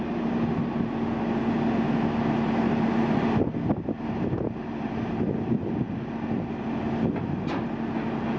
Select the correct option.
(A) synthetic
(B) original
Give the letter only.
B